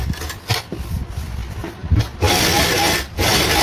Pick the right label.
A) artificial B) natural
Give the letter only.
B